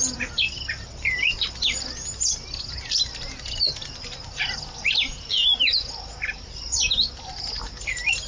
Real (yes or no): yes